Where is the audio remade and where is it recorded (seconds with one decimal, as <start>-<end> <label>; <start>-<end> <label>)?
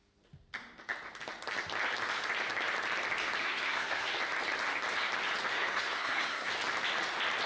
0.0-3.4 recorded; 3.4-4.1 remade; 4.1-5.5 recorded; 5.5-6.5 remade; 6.5-7.5 recorded